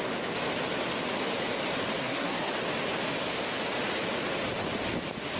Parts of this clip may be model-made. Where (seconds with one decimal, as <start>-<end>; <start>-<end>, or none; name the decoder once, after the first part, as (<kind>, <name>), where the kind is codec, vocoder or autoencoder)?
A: 2.0-2.5 (codec, SNAC)